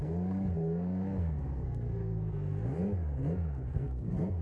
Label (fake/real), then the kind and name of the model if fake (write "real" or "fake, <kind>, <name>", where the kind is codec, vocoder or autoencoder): fake, codec, SNAC